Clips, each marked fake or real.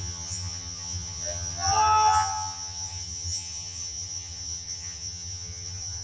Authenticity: fake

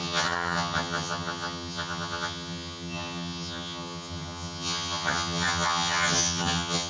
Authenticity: fake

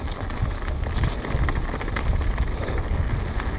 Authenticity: real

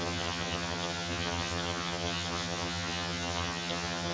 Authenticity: fake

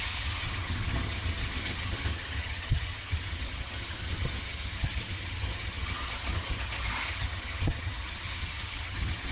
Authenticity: fake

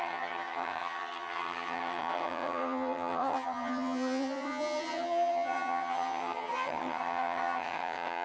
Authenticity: fake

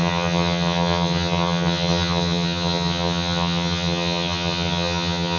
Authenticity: fake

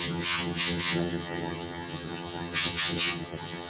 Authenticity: fake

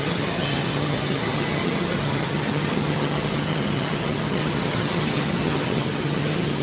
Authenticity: fake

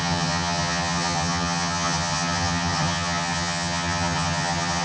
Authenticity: fake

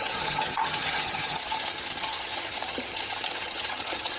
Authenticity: fake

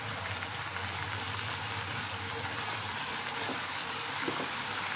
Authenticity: real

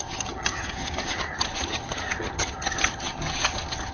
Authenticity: fake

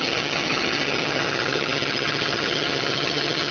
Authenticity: fake